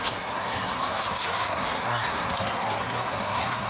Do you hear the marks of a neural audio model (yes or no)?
yes